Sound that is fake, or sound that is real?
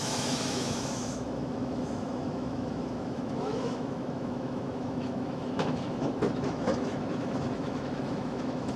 fake